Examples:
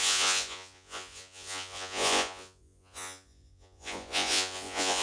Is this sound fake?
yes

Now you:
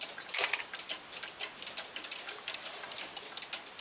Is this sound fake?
no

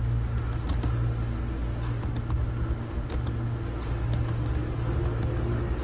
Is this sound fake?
no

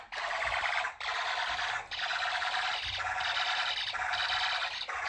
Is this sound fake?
no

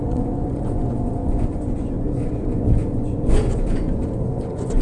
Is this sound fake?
yes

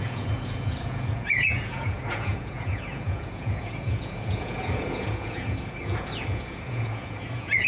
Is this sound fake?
yes